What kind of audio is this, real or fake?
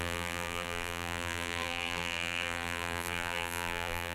fake